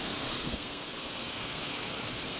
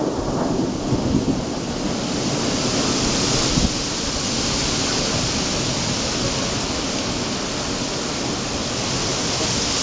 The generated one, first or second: first